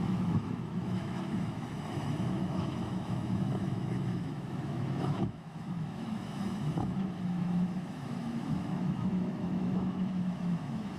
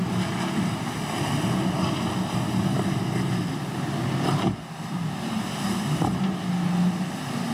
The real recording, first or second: second